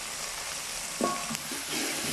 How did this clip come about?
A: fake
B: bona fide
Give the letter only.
B